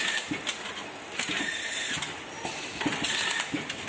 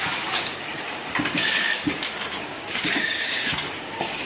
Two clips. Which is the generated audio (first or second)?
second